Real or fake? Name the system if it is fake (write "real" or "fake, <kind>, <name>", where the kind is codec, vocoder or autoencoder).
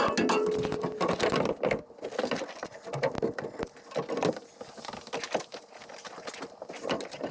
real